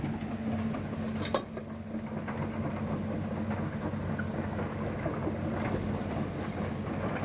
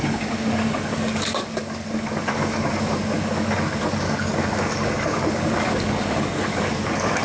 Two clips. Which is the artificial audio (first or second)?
second